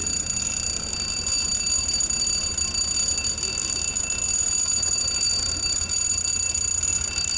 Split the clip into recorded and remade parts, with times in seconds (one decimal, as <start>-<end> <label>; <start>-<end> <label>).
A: 0.0-7.4 recorded